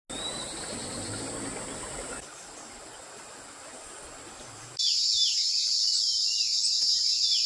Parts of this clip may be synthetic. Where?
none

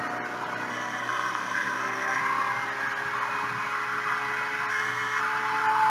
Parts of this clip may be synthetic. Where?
0.7-2.2; 4.7-5.2

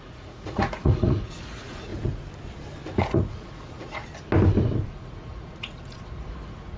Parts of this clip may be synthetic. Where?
0.0-1.9; 3.0-4.0; 4.9-6.8